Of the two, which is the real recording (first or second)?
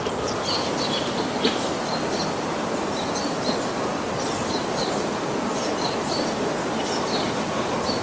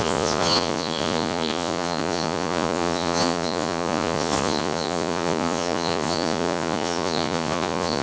first